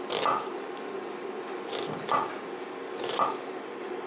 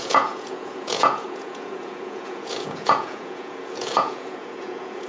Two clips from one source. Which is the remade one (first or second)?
second